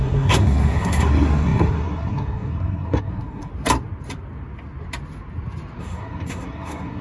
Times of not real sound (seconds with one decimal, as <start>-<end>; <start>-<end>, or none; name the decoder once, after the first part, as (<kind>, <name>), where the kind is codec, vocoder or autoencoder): 0.0-3.5 (codec, SNAC); 5.8-7.0